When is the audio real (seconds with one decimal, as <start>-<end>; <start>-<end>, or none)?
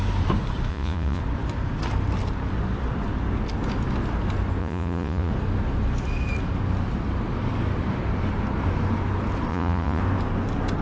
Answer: 0.0-0.7; 1.2-4.6; 5.3-9.5; 10.0-10.8